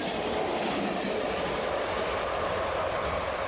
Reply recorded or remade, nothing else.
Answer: recorded